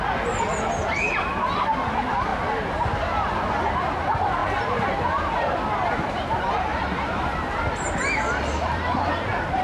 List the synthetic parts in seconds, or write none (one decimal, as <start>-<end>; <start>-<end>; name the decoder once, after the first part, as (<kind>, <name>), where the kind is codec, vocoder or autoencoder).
none